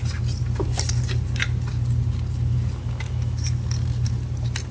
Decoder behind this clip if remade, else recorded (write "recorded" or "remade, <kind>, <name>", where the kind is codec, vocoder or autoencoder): recorded